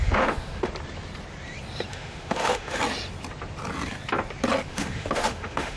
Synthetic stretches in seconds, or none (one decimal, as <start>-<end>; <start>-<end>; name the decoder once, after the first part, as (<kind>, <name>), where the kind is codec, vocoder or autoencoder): 0.0-0.7 (autoencoder, DAC-VAE); 1.9-2.8; 4.7-5.8